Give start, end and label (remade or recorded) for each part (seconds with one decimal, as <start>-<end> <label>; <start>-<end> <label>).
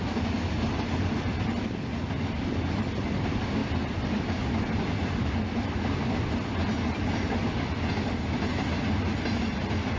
0.0-3.6 recorded; 3.6-4.5 remade; 4.5-10.0 recorded